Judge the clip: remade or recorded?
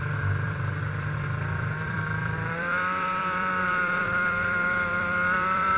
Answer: remade